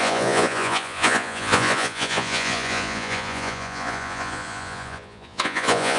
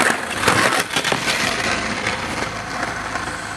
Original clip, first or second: second